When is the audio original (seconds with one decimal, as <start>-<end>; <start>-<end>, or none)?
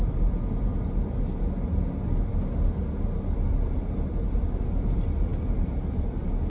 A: 0.0-6.5